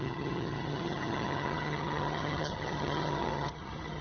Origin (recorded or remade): remade